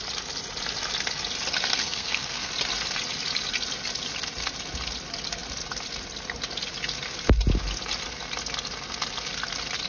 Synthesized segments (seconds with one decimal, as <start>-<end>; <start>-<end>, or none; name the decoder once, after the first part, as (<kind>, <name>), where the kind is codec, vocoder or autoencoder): 1.7-2.5 (codec, SNAC)

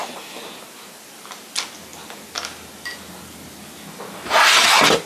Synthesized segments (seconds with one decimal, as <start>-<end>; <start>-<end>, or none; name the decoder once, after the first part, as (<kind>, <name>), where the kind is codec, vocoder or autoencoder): none

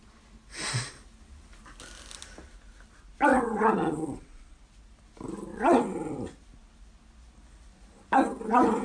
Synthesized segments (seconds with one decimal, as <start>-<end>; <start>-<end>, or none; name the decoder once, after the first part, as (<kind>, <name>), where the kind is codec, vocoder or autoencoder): 3.3-4.6 (vocoder, WaveNeXt); 5.5-6.1

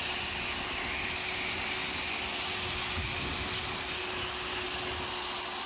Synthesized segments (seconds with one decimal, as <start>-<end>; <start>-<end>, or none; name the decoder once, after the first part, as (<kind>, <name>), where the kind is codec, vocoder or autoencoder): none